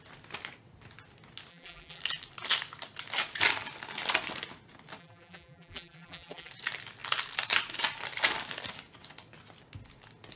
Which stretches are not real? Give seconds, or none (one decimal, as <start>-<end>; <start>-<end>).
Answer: 1.5-2.0; 5.0-6.5